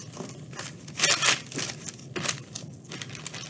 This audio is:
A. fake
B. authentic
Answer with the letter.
B